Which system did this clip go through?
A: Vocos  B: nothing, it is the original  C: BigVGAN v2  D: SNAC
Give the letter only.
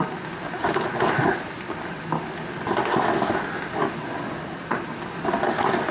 B